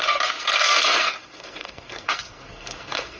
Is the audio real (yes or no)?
no